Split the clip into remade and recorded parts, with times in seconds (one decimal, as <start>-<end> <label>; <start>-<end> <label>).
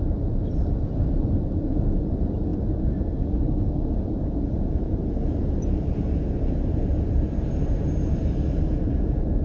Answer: 0.0-9.4 recorded